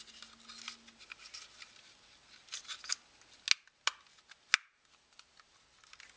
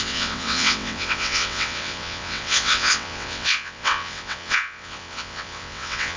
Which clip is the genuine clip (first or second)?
first